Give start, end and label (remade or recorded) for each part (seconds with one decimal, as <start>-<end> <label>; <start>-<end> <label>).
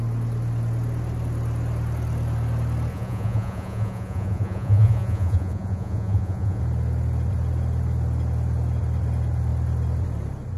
0.0-2.9 recorded; 2.9-6.6 remade; 6.6-10.6 recorded